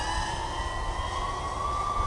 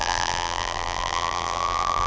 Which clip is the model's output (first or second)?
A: second